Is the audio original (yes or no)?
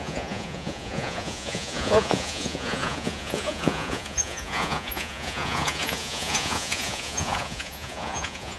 no